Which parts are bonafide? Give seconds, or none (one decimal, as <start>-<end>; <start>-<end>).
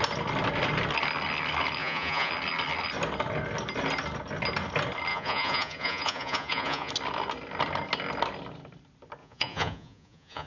0.0-1.8; 2.3-5.1; 6.9-9.2